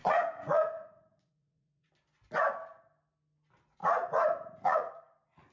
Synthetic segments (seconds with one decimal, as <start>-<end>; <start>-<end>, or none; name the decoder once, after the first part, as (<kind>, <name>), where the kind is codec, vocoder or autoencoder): 0.0-1.9 (vocoder, Vocos); 3.8-4.9